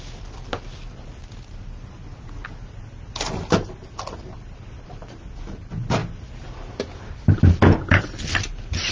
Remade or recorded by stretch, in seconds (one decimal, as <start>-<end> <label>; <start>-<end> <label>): 0.0-8.9 recorded